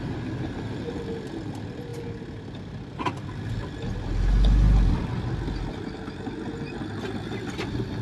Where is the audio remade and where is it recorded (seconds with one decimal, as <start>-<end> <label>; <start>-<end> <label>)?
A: 0.0-8.0 recorded

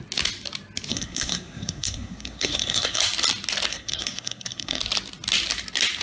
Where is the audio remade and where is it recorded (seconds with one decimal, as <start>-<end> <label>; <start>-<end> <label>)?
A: 0.0-0.9 recorded; 0.9-3.0 remade; 3.0-3.7 recorded; 3.7-4.8 remade; 4.8-6.0 recorded

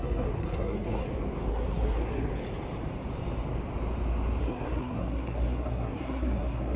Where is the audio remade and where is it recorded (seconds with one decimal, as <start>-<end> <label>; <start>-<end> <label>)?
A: 0.0-1.0 remade; 1.0-1.5 recorded; 1.5-2.3 remade; 2.3-4.4 recorded; 4.4-6.8 remade

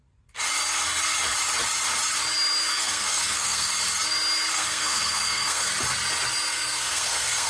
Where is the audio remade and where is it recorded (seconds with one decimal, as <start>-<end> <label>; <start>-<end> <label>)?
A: 0.0-2.7 recorded; 2.7-3.7 remade; 3.7-4.5 recorded; 4.5-5.7 remade; 5.7-6.5 recorded; 6.5-7.5 remade